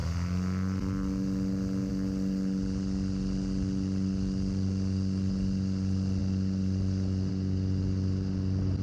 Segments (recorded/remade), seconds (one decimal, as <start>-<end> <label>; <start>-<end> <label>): 0.0-8.8 recorded